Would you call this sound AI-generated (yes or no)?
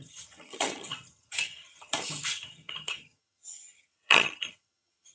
yes